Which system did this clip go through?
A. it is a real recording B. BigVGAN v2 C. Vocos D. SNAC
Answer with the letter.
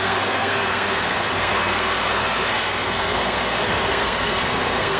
D